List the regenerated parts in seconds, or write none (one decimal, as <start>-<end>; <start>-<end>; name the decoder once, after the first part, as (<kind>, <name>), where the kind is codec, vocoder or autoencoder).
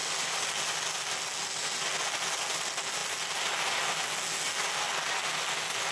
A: 0.0-0.5 (vocoder, BigVGAN v2)